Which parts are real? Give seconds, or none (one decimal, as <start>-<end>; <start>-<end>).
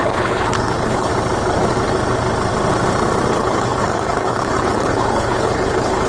1.1-3.3